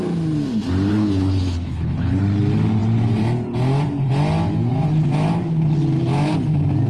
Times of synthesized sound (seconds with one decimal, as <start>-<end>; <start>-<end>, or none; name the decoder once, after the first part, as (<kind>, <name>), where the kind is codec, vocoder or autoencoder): 0.9-2.2 (codec, HILCodec)